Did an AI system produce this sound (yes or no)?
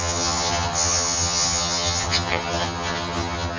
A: yes